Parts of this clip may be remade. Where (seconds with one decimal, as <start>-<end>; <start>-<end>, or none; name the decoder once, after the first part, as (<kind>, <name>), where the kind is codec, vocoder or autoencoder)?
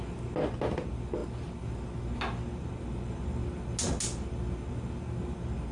none